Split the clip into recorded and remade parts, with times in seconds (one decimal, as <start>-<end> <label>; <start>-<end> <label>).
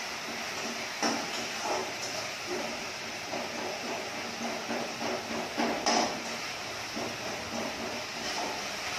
0.0-1.8 recorded; 1.8-3.9 remade; 3.9-9.0 recorded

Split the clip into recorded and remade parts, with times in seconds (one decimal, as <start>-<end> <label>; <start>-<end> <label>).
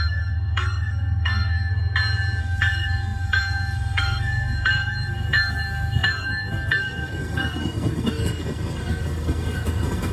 0.0-1.7 remade; 1.7-2.4 recorded; 2.4-10.1 remade